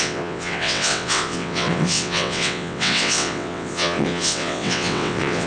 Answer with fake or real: fake